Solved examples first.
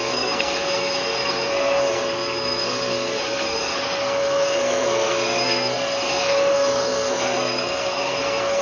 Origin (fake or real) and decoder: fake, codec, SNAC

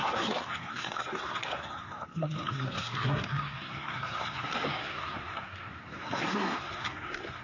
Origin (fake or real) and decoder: fake, codec, SNAC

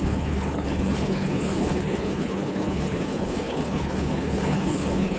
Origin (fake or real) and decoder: fake, codec, HILCodec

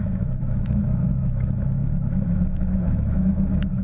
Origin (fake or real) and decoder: fake, autoencoder, DAC-VAE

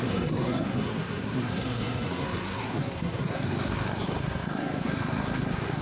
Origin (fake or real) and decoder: fake, codec, SNAC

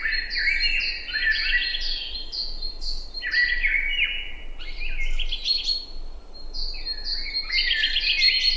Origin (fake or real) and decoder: real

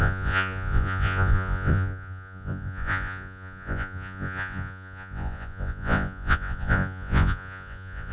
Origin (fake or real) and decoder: fake, vocoder, Vocos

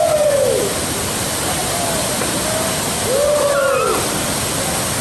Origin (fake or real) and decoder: real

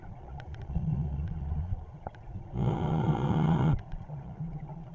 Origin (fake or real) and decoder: fake, vocoder, Vocos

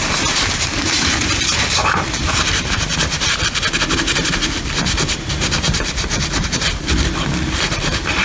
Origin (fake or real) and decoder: fake, vocoder, BigVGAN v2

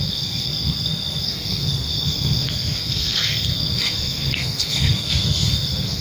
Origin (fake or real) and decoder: fake, codec, SNAC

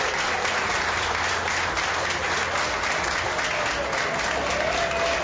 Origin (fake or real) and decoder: real